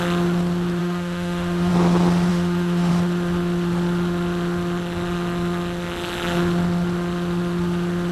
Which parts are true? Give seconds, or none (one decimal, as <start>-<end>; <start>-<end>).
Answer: 0.0-0.8; 1.7-2.3; 2.9-8.1